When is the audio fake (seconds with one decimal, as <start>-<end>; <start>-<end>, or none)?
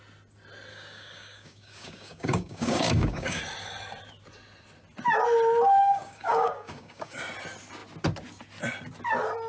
0.7-3.4; 5.8-7.2